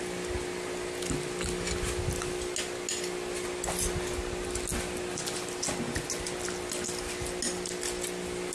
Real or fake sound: real